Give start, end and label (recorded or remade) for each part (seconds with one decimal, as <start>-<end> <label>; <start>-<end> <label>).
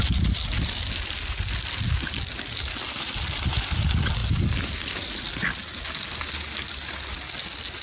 0.0-7.8 recorded